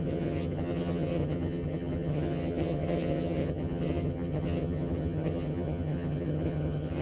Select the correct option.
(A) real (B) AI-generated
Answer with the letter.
B